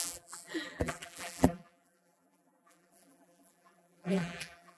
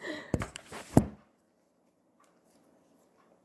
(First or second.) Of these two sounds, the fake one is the first